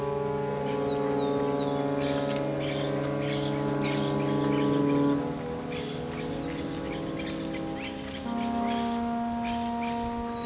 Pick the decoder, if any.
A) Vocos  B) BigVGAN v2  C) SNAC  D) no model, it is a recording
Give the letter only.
D